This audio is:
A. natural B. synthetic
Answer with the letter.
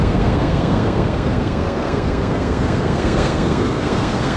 B